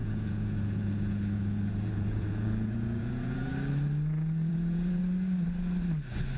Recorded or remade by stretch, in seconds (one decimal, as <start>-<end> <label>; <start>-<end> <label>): 0.0-3.5 remade; 3.5-4.5 recorded; 4.5-5.0 remade; 5.0-6.4 recorded